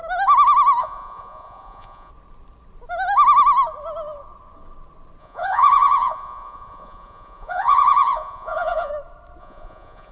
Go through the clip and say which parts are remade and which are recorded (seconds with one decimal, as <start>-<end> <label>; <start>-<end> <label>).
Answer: 0.0-0.8 recorded; 0.8-2.1 remade; 2.1-5.2 recorded; 5.2-8.9 remade; 8.9-9.4 recorded; 9.4-10.1 remade